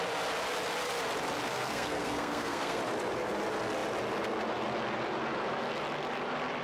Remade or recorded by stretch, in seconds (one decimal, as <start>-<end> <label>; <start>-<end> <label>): 0.0-1.5 recorded; 1.5-2.8 remade; 2.8-6.6 recorded